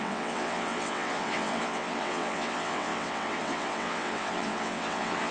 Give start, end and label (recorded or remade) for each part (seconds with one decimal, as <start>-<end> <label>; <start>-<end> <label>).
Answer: 0.0-5.3 remade